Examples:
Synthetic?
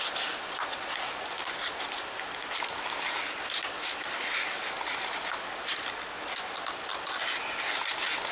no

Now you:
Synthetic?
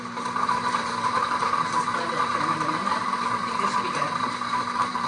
yes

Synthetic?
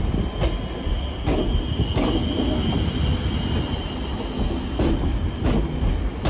no